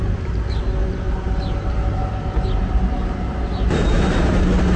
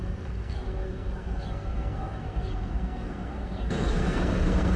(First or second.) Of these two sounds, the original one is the first